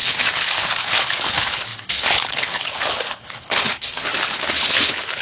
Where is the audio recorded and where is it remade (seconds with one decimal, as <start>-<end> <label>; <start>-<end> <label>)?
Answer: 0.0-5.2 remade